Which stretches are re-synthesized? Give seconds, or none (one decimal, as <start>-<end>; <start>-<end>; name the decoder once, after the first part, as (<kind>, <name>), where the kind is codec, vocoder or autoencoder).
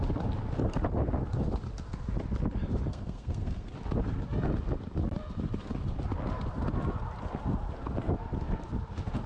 2.9-3.7 (codec, SNAC)